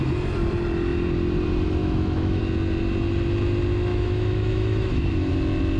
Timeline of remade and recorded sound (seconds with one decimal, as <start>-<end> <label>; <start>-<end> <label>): 0.0-1.8 recorded; 1.8-2.4 remade; 2.4-3.9 recorded; 3.9-5.3 remade; 5.3-5.8 recorded